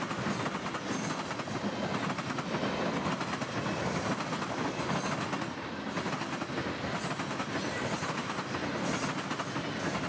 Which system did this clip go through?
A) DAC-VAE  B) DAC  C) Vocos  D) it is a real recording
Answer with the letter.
D